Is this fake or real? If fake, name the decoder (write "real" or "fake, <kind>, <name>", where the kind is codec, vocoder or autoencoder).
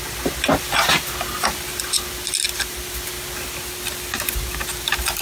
real